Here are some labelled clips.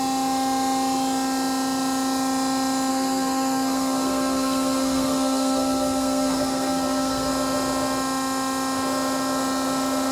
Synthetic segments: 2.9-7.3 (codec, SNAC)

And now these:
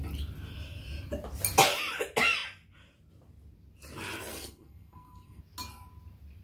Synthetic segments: 4.3-5.4 (codec, SNAC)

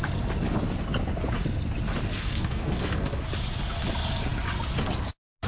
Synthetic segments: 2.1-3.2 (codec, SNAC)

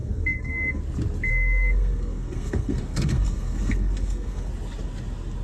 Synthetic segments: 0.0-0.8 (codec, SNAC); 1.3-4.5

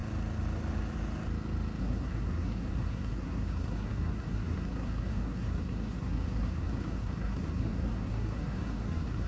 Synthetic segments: 1.8-9.3 (codec, SNAC)

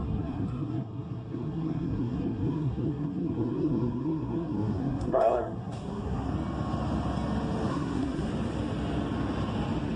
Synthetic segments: 0.0-6.3 (codec, SNAC); 7.7-8.3

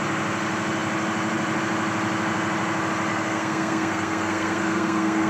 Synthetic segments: 3.1-5.3 (codec, SNAC)

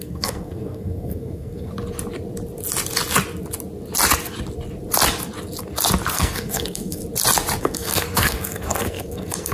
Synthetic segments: 0.0-1.7 (codec, SNAC); 6.1-7.0; 7.6-9.5